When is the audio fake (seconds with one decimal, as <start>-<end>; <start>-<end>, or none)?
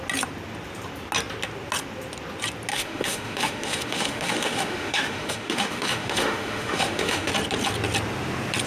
2.7-7.3